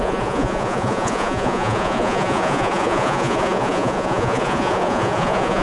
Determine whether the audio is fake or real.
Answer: fake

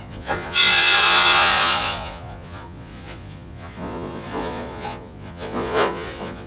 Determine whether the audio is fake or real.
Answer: fake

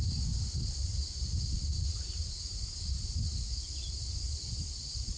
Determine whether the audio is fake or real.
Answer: real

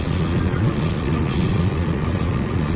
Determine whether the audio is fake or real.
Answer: fake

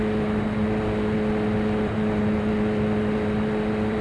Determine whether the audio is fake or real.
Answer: real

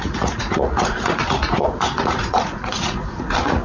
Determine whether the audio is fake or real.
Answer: fake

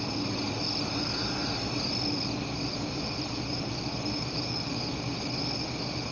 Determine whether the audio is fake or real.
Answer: real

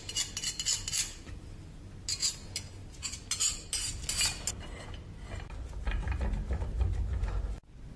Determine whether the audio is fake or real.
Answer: real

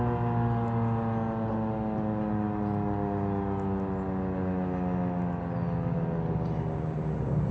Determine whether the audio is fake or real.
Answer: real